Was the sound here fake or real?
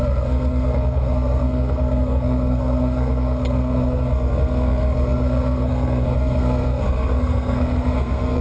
fake